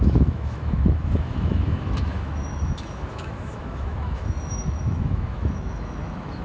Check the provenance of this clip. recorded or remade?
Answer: remade